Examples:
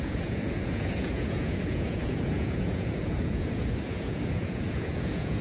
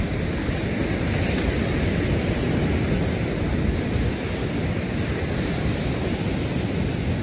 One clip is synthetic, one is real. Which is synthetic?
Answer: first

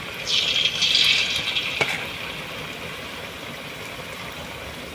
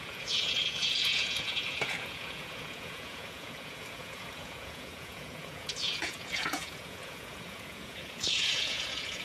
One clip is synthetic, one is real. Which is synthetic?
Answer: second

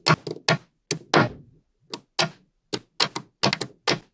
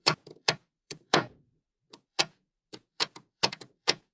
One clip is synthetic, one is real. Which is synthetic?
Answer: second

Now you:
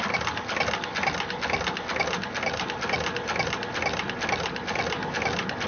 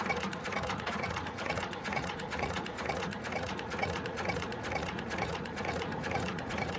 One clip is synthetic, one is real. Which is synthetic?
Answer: second